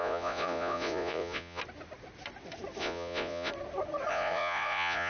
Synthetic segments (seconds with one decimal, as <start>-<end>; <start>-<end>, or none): 0.0-1.6; 2.8-3.5; 4.1-5.1